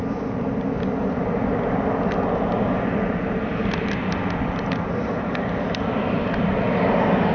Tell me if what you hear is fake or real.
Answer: real